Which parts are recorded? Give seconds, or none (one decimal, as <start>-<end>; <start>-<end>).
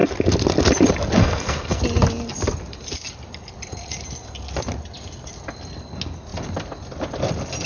0.0-1.2; 1.8-7.7